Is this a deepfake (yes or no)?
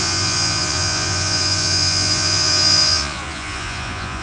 yes